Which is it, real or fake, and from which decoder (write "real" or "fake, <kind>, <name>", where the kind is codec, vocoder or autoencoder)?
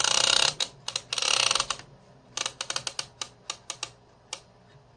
real